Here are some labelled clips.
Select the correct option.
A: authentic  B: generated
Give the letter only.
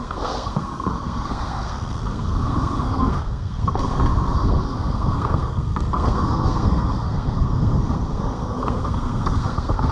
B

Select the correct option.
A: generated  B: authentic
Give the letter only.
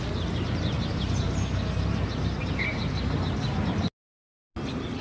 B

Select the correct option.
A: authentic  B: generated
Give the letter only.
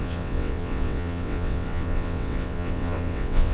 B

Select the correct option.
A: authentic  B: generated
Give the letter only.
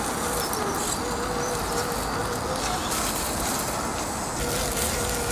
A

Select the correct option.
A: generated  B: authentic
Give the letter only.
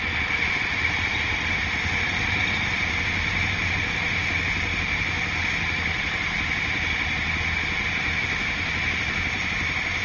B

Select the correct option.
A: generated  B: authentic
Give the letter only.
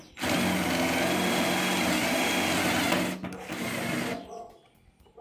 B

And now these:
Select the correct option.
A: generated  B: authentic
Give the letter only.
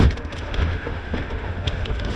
A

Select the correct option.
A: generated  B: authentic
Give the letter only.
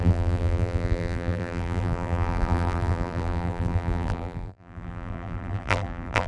A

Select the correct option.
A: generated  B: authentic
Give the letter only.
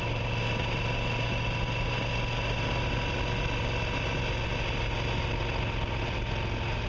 B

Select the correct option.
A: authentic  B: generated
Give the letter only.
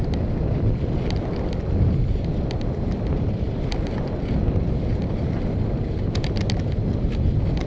A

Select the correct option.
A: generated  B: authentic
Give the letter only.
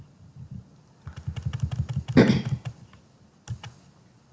B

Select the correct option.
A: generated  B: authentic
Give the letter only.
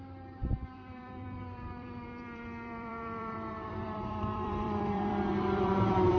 A